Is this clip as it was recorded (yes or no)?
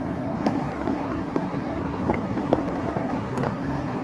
no